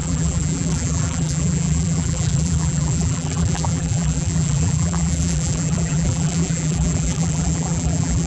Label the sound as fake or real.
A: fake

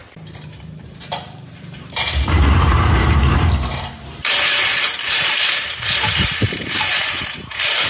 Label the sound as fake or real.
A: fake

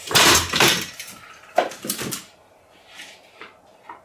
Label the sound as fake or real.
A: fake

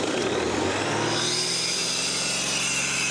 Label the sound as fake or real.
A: fake